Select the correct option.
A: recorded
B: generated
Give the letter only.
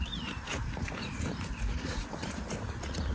B